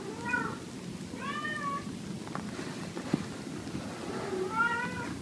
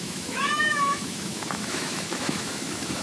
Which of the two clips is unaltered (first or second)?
first